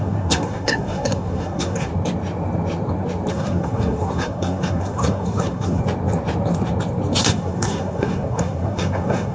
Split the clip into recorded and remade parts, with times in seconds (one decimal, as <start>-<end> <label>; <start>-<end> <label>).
0.0-1.9 remade; 1.9-3.3 recorded; 3.3-5.8 remade; 5.8-7.2 recorded; 7.2-9.3 remade

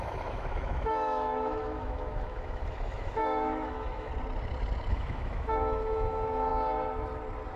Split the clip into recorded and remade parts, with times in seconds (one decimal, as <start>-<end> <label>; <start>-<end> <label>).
0.0-4.1 remade; 4.1-4.9 recorded; 4.9-6.5 remade; 6.5-7.6 recorded

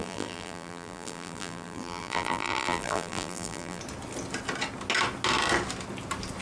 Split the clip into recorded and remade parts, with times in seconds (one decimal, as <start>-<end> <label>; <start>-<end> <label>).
0.0-3.8 remade; 3.8-6.4 recorded

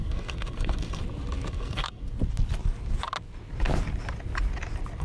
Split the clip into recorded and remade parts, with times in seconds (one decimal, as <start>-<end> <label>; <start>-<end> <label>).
0.0-1.0 remade; 1.0-1.5 recorded; 1.5-2.0 remade; 2.0-5.0 recorded

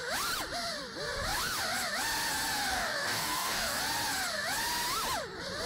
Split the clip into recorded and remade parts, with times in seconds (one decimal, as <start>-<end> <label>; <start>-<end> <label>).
0.0-2.7 recorded; 2.7-3.8 remade; 3.8-5.7 recorded

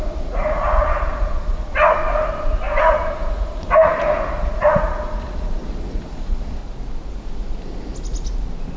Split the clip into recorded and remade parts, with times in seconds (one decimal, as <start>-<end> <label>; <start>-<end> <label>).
0.0-2.0 remade; 2.0-2.8 recorded; 2.8-6.6 remade; 6.6-8.8 recorded